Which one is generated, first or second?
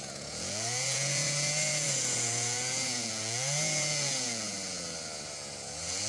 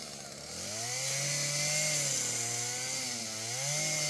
first